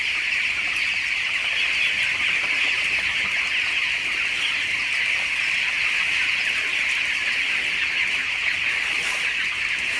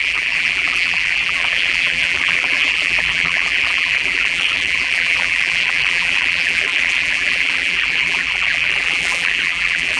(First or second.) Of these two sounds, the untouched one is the first